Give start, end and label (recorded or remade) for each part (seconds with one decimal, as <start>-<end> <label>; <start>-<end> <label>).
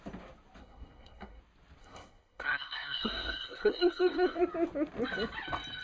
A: 0.0-0.6 recorded; 0.6-1.4 remade; 1.4-1.8 recorded; 1.8-4.4 remade; 4.4-5.8 recorded